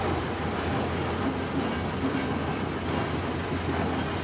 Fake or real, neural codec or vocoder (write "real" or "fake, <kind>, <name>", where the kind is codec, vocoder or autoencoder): real